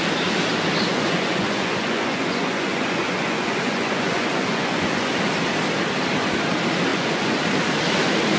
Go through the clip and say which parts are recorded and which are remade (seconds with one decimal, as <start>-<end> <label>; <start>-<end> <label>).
0.0-0.9 recorded; 0.9-5.1 remade; 5.1-6.9 recorded; 6.9-7.4 remade; 7.4-8.4 recorded